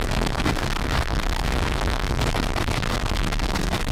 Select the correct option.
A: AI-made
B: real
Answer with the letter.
A